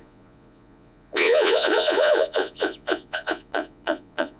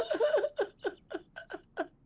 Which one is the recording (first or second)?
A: second